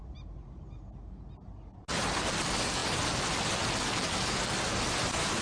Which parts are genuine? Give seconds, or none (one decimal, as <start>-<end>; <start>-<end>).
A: 0.0-5.4